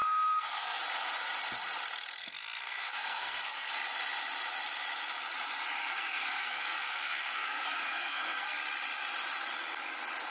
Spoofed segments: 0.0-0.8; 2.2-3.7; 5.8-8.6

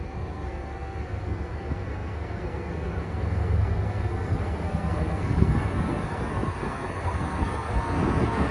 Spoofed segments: 0.0-8.5

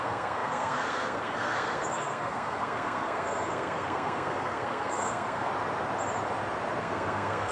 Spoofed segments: 0.0-5.5; 6.8-7.5

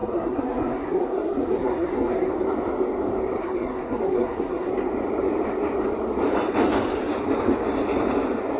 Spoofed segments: 0.0-2.3; 3.4-4.7

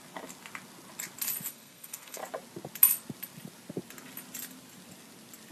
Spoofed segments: 1.5-2.2

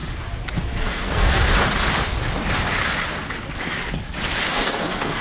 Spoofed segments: 0.6-1.4; 4.5-5.2

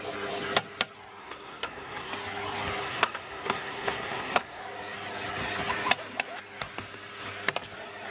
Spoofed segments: 1.2-2.1; 2.8-4.6

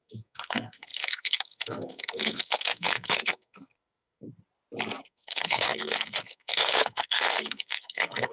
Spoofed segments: 0.0-4.3; 5.0-8.3